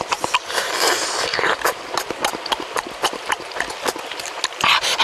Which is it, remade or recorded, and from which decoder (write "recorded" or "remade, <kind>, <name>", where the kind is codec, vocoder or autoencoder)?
recorded